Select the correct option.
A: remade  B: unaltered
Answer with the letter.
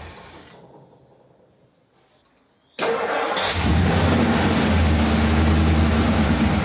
B